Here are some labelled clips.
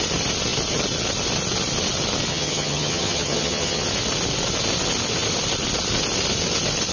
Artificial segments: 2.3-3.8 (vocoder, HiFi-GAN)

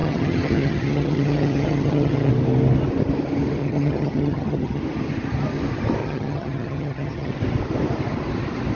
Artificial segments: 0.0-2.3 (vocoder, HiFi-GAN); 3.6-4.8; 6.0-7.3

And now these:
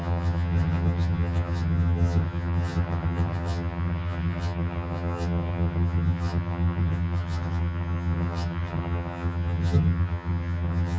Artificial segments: 0.0-11.0 (vocoder, HiFi-GAN)